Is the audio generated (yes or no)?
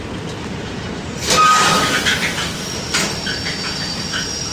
no